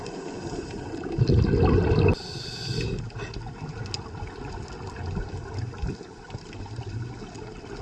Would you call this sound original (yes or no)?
yes